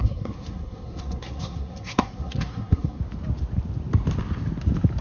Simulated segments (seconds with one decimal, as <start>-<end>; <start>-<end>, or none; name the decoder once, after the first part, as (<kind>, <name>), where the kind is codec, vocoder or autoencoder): 0.0-3.0 (codec, SNAC)